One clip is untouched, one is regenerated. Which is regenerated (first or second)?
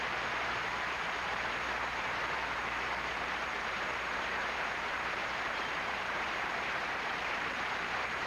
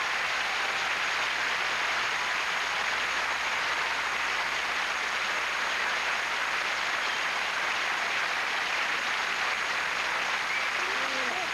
first